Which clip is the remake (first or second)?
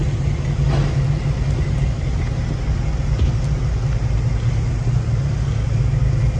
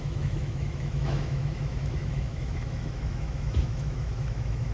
second